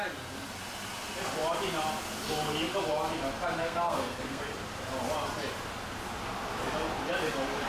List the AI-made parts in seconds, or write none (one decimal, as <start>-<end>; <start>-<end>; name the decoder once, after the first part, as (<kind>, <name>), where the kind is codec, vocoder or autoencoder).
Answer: 3.6-4.4 (codec, SNAC)